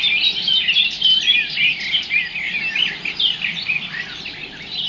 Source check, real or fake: real